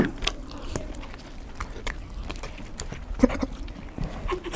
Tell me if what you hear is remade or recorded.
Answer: recorded